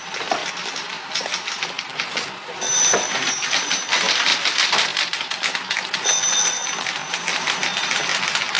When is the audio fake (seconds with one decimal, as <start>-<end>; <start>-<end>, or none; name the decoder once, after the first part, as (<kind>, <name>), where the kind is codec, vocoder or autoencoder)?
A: none